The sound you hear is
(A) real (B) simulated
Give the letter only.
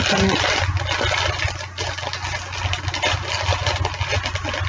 A